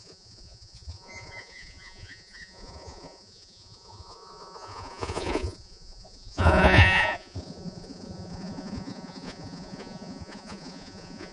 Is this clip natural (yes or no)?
no